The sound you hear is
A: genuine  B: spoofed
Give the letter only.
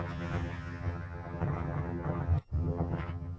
B